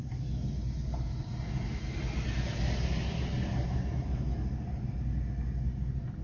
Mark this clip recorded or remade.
recorded